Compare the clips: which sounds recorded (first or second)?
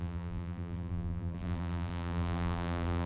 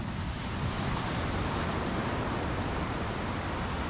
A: second